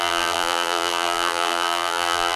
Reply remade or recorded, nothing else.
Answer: remade